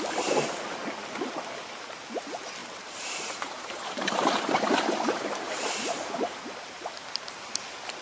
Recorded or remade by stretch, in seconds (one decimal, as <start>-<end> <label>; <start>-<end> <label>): 0.0-2.6 recorded; 2.6-6.4 remade; 6.4-8.0 recorded